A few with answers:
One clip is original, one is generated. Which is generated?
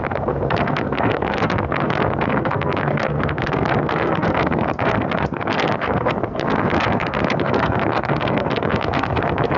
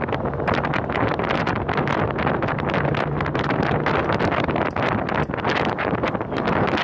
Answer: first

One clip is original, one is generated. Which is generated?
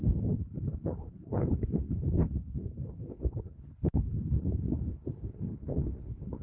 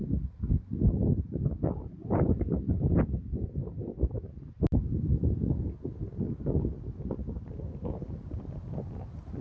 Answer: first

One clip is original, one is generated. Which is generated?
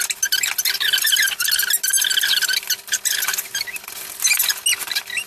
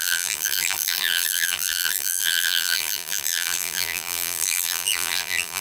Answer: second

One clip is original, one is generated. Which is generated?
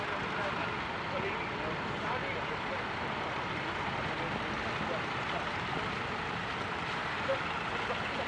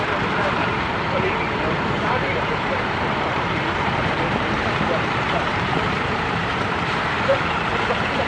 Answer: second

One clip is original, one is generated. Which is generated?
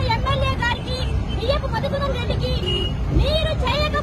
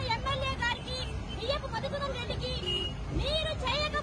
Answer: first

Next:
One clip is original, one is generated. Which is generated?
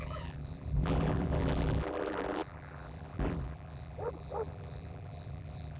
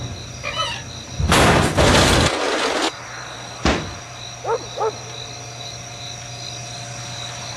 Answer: first